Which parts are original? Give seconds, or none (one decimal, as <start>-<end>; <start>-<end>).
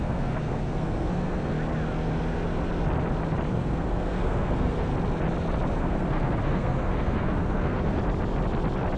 1.5-3.5; 4.9-5.8; 8.0-9.0